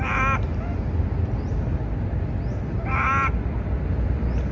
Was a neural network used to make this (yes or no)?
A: no